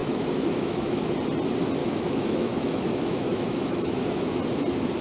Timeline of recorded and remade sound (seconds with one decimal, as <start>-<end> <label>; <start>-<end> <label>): 0.0-1.1 remade; 1.1-1.8 recorded; 1.8-4.4 remade; 4.4-5.0 recorded